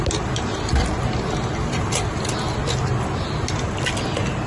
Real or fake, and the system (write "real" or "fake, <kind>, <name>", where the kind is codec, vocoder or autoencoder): real